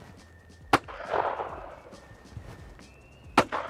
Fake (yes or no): no